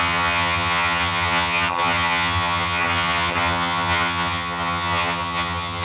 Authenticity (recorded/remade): remade